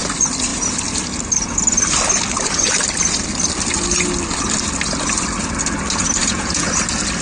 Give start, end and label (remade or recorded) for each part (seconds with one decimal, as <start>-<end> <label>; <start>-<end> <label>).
0.0-6.2 recorded; 6.2-6.7 remade; 6.7-7.2 recorded